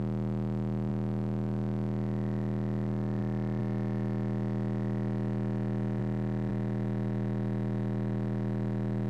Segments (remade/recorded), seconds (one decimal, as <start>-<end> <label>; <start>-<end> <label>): 0.0-6.5 recorded; 6.5-9.1 remade